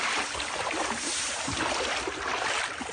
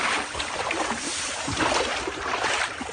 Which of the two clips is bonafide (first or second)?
first